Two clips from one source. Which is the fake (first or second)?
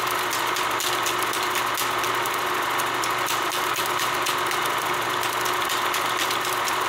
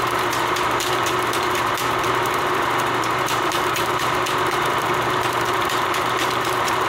second